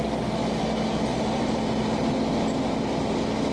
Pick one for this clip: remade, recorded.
recorded